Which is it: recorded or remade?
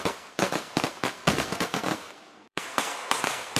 remade